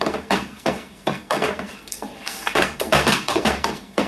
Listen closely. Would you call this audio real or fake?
fake